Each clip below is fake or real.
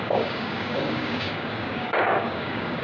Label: fake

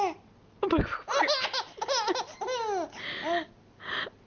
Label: real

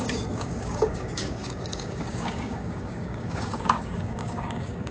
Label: fake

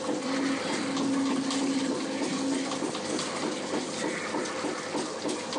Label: real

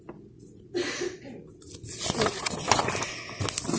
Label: real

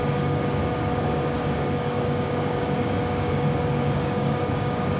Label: fake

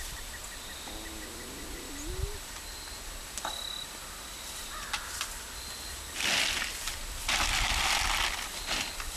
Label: real